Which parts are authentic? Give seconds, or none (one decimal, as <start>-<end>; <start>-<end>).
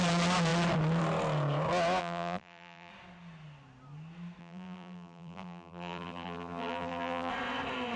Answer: 0.0-2.0; 2.9-4.4; 7.3-8.0